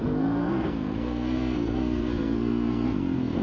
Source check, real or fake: fake